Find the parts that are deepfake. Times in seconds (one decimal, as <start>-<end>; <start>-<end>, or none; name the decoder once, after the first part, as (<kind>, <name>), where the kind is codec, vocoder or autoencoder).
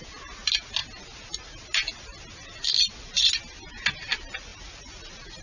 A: none